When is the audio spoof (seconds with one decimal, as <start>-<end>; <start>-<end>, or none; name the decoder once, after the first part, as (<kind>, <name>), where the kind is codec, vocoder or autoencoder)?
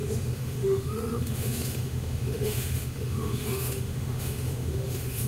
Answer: 0.0-5.3 (autoencoder, DAC-VAE)